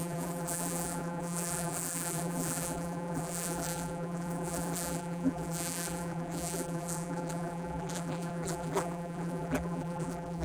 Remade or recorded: remade